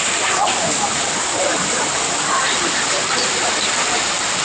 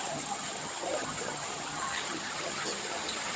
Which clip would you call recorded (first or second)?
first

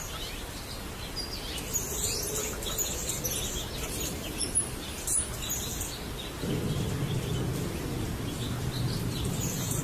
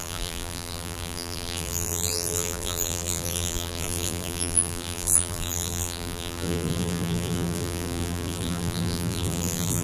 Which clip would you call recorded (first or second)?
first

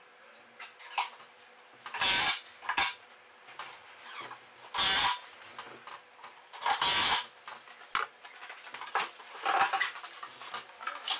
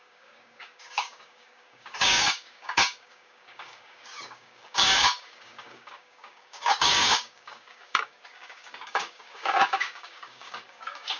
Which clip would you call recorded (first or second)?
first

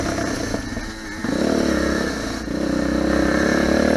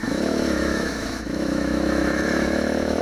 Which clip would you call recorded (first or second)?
first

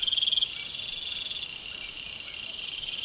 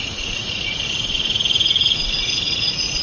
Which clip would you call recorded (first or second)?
first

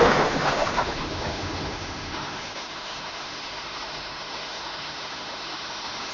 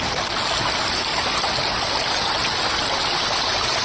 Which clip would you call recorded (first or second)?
second